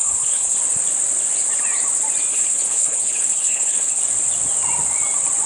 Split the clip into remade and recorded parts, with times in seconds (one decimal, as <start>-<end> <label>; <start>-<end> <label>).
0.0-0.6 remade; 0.6-2.3 recorded; 2.3-4.0 remade; 4.0-5.5 recorded